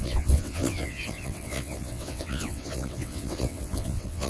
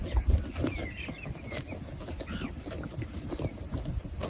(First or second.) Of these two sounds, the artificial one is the first